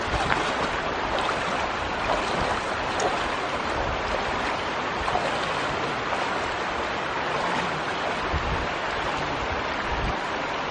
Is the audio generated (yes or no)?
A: no